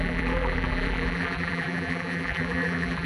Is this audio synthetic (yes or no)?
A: yes